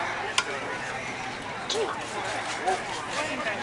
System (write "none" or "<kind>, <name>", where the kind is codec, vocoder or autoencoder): none